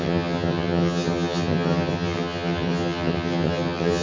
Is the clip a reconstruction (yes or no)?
yes